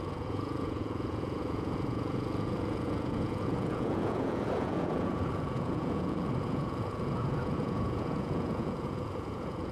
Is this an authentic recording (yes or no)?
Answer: no